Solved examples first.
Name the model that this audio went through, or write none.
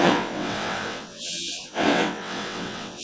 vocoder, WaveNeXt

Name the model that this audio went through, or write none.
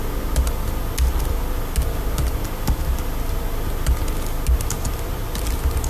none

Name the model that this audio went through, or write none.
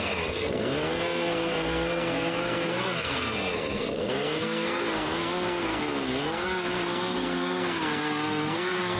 codec, SNAC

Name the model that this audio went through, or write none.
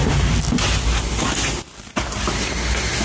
none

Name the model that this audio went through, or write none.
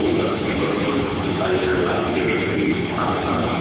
codec, HILCodec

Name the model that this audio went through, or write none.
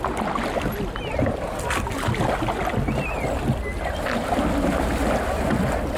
none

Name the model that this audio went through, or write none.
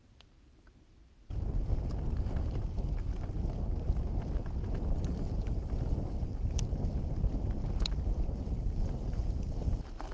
none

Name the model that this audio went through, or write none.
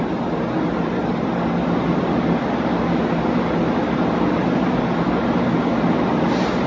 none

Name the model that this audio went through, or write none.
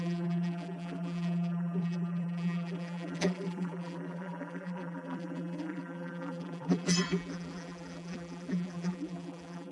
vocoder, BigVGAN v2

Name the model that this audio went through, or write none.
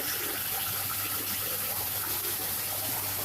none